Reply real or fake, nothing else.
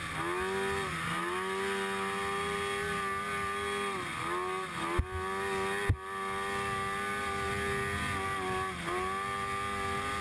real